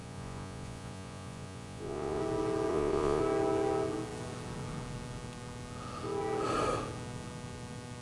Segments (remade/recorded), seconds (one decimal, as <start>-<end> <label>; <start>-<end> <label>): 0.0-2.2 remade; 2.2-2.7 recorded; 2.7-3.2 remade; 3.2-8.0 recorded